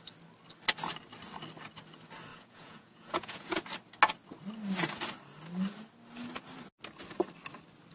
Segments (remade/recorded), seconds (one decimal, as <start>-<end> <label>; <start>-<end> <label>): 0.0-2.3 recorded; 2.3-3.6 remade; 3.6-7.9 recorded